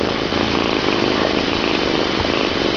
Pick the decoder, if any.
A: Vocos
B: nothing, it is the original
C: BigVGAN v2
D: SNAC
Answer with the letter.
C